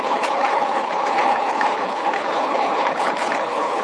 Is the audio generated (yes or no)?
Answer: yes